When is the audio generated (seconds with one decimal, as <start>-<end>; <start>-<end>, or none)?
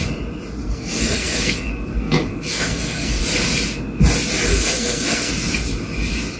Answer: 0.6-3.2; 4.5-5.3